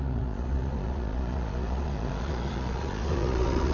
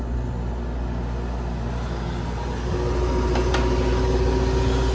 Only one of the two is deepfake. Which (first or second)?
first